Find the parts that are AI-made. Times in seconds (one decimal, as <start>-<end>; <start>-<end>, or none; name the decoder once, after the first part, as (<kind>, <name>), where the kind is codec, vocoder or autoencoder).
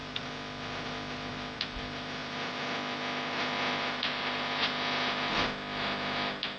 none